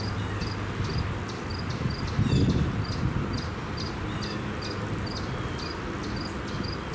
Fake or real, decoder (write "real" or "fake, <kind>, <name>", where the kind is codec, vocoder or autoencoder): real